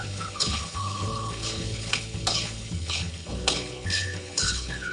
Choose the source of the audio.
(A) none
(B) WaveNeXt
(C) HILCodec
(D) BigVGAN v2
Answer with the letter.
C